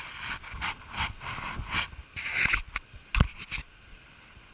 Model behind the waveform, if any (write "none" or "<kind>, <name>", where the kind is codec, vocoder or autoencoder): none